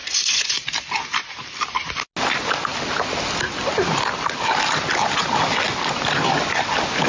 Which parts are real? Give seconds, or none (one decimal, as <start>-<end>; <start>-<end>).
0.5-7.1